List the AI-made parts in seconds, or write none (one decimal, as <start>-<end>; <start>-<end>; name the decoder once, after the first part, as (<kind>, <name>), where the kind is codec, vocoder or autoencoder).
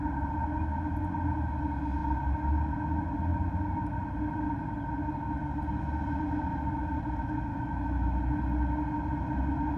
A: 7.5-8.4 (autoencoder, DAC-VAE)